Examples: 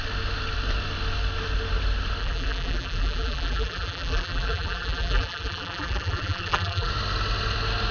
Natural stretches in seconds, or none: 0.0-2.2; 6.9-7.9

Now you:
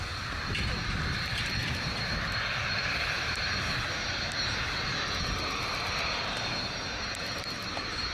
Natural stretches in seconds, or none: 0.0-1.6; 3.4-8.1

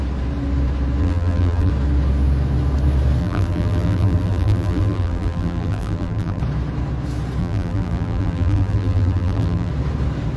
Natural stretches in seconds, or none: 0.0-1.0; 1.7-3.2; 6.4-7.4; 9.7-10.4

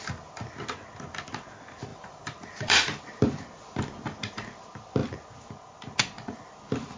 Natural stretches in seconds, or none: 0.0-1.9; 3.0-7.0

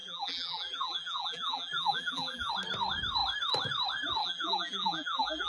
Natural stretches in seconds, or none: 2.5-4.2

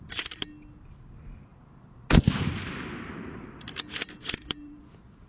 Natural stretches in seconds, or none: 0.0-1.5; 2.2-4.2; 4.8-5.3